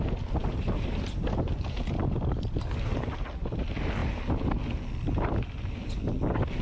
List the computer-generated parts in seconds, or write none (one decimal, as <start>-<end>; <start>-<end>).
0.4-1.8